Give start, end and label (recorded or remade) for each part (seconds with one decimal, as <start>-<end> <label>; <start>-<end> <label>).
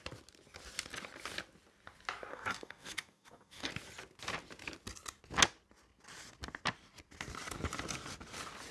0.0-2.3 recorded; 2.3-3.7 remade; 3.7-8.7 recorded